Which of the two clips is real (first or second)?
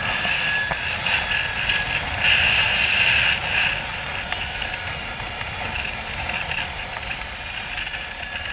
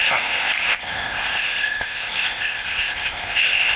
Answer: first